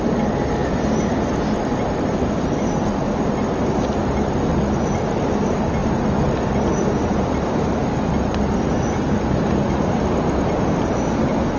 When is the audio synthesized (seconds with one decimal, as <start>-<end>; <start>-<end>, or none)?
none